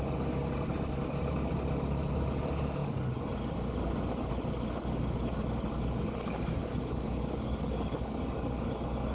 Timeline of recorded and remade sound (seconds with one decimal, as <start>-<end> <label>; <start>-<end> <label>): 0.0-6.6 recorded; 6.6-8.2 remade; 8.2-9.1 recorded